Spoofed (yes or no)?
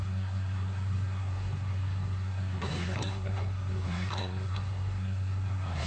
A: yes